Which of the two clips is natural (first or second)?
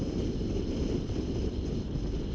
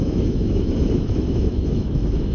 first